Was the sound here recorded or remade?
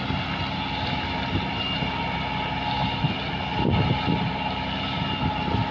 recorded